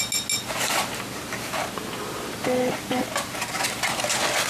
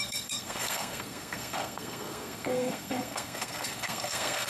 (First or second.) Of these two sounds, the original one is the first